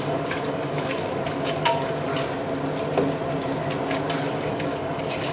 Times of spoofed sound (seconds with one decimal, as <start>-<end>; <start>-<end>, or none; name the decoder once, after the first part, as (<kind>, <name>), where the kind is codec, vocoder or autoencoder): 0.0-2.1 (codec, DAC); 4.2-5.3